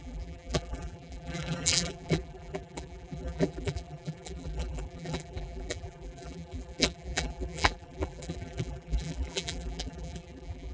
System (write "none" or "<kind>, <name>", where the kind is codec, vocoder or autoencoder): vocoder, BigVGAN v2